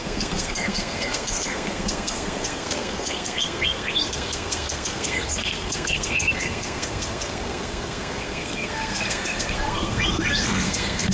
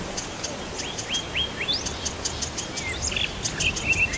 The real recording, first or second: second